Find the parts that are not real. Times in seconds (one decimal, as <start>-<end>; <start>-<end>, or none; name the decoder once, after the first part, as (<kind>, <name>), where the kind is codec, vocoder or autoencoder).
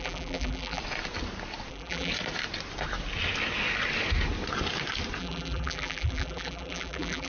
0.0-0.8 (vocoder, BigVGAN v2); 1.7-2.1; 5.2-7.3